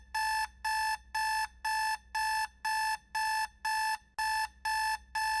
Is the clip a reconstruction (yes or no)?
no